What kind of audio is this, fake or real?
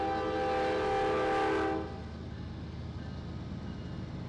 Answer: real